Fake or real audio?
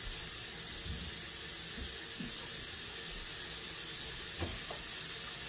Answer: real